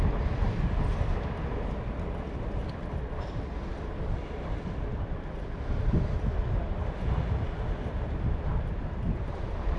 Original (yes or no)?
yes